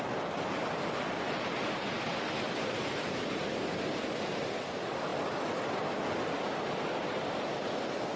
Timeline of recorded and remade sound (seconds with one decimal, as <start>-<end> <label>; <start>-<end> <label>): 0.0-8.2 recorded